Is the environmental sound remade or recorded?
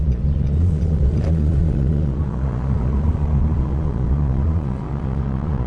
remade